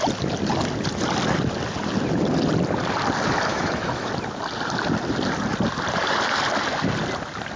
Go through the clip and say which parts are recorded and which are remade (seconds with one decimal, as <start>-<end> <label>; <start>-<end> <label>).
0.0-3.5 recorded; 3.5-4.1 remade; 4.1-7.6 recorded